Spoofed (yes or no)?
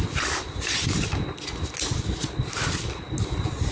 no